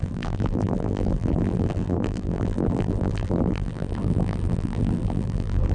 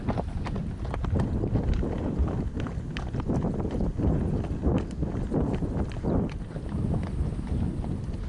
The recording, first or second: second